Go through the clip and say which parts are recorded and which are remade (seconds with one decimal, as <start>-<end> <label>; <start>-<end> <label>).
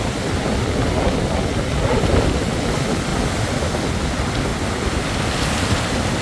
0.0-6.2 recorded